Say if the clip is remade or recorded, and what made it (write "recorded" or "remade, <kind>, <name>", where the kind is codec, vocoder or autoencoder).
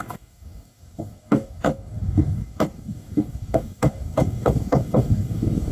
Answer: remade, codec, DAC